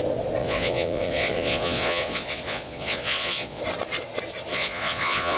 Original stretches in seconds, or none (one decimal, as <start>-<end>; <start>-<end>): 0.0-0.4; 3.6-4.5